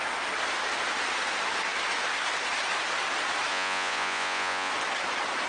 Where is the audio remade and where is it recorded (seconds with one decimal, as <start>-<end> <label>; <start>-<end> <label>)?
0.0-3.5 recorded; 3.5-4.7 remade; 4.7-5.5 recorded